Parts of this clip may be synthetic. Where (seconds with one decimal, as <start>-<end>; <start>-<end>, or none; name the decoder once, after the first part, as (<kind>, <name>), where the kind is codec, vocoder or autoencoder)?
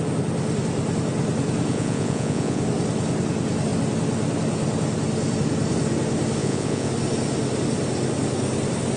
1.7-2.6 (vocoder, Vocos); 6.4-6.9